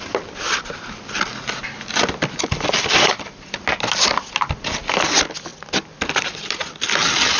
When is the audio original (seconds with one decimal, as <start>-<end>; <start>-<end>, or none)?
0.0-7.4

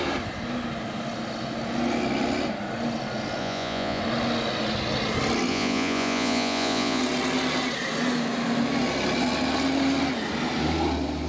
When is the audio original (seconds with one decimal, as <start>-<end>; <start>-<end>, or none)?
0.0-3.4; 4.0-5.5; 7.0-11.3

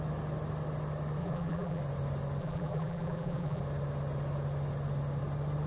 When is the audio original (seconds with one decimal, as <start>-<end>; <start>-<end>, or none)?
0.0-1.2; 1.8-2.4; 3.6-5.7

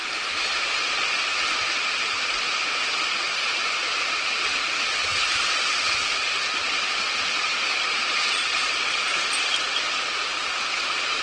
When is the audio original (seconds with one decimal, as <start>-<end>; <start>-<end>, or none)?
0.7-1.3; 4.4-8.0; 9.6-11.2

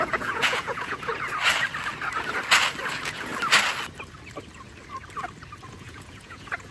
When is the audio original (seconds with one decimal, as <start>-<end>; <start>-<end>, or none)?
1.1-2.9; 3.3-5.7

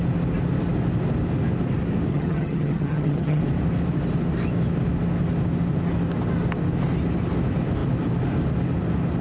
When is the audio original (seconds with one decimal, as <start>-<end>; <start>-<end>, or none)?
0.0-2.1; 3.4-9.2

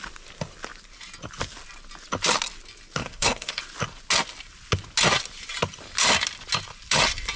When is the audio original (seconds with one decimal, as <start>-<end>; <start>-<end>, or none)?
0.0-3.0; 3.6-7.4

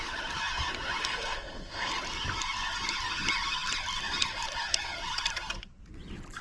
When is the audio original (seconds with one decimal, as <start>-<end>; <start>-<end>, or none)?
0.0-1.0; 1.9-6.4